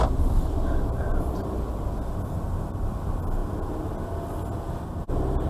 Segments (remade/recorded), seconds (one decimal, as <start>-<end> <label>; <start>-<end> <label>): 0.0-5.5 recorded